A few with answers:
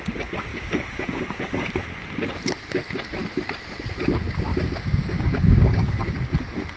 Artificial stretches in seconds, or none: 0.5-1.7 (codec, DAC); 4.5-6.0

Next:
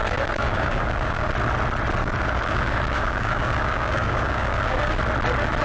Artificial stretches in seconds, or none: 0.0-1.3 (codec, DAC); 2.0-4.9

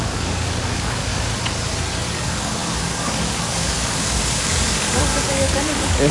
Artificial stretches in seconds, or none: 0.0-1.1 (codec, DAC); 2.1-6.1